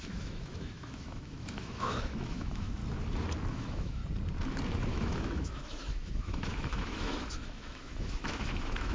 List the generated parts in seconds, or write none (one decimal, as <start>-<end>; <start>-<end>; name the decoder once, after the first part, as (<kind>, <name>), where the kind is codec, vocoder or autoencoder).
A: 0.0-2.8 (autoencoder, DAC-VAE); 3.5-4.0; 4.9-8.9